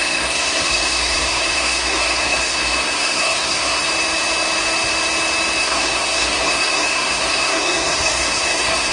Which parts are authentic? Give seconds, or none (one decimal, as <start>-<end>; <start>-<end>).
3.9-5.6